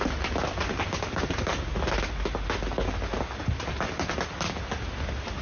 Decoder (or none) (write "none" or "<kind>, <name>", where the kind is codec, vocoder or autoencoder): none